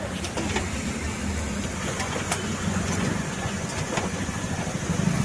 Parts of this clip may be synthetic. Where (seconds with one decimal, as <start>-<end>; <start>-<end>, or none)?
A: 1.8-4.5